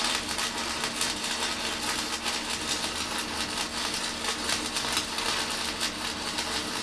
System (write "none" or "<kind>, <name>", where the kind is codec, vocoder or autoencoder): none